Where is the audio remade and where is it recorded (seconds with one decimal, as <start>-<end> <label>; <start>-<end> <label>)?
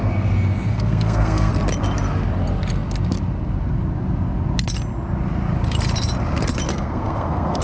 0.0-0.7 recorded; 0.7-1.5 remade; 1.5-6.7 recorded; 6.7-7.6 remade